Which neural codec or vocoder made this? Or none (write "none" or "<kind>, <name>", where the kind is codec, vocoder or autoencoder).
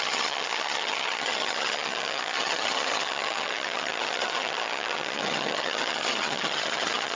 vocoder, HiFi-GAN